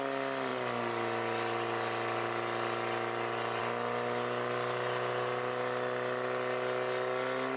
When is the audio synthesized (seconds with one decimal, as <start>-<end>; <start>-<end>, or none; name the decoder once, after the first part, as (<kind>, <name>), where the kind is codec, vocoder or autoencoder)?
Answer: none